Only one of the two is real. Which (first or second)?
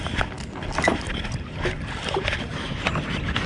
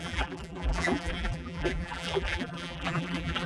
first